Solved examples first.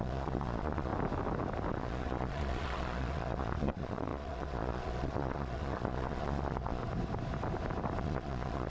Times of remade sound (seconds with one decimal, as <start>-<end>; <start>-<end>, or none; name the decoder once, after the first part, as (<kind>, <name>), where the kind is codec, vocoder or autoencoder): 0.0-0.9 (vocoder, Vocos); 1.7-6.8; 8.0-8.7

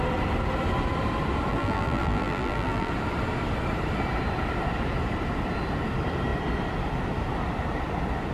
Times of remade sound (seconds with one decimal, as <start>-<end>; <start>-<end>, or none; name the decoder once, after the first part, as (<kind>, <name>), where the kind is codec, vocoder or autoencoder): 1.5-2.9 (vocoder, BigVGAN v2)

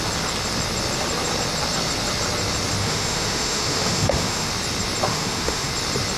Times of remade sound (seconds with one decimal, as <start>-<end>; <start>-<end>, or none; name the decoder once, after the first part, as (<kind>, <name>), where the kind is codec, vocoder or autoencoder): 2.8-4.5 (autoencoder, DAC-VAE); 5.1-5.7

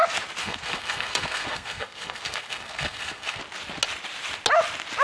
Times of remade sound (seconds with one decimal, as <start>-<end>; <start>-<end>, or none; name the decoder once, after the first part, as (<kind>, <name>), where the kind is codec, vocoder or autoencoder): 0.4-3.4 (codec, SNAC)

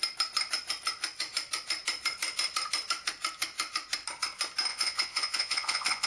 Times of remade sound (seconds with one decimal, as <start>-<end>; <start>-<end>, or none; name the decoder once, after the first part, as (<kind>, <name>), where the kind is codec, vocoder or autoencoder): 4.7-6.1 (vocoder, Vocos)